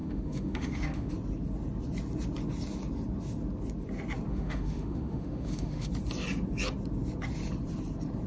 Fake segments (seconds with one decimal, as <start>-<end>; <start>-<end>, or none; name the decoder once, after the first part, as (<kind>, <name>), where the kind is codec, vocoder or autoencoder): 0.0-1.1 (autoencoder, DAC-VAE); 4.3-5.9

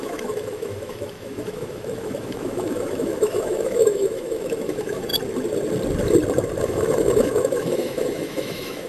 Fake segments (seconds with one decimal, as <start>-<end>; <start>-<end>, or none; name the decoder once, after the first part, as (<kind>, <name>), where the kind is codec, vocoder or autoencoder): 0.0-5.1 (autoencoder, DAC-VAE); 6.6-8.9

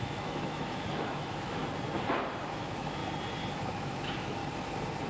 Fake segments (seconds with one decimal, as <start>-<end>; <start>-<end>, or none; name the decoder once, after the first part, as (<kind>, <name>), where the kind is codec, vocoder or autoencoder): 0.0-1.6 (autoencoder, DAC-VAE); 2.4-3.0; 3.7-4.4

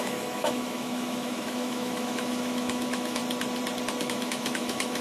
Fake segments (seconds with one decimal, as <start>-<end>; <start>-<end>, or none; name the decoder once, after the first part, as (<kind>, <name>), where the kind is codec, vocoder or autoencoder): 0.0-3.2 (autoencoder, DAC-VAE); 4.0-5.0

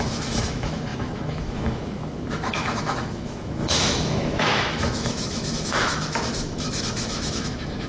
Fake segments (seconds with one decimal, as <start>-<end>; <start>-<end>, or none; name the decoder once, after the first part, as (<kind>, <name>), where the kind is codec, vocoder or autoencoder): 0.0-7.9 (autoencoder, DAC-VAE)

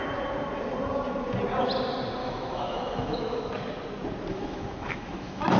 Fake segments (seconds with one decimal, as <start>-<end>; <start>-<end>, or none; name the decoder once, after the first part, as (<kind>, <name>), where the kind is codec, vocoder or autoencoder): 2.2-3.5 (autoencoder, DAC-VAE); 4.3-5.6

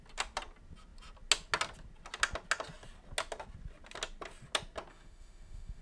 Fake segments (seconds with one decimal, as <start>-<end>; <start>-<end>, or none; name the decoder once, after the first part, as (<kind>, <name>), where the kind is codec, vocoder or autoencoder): 4.9-5.8 (autoencoder, DAC-VAE)

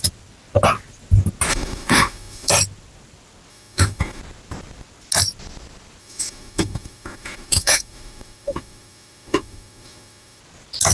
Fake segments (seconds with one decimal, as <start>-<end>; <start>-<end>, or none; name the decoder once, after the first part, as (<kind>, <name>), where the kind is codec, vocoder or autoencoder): 1.5-2.5 (autoencoder, DAC-VAE); 3.5-4.2; 6.0-10.4